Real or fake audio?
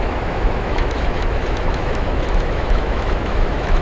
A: fake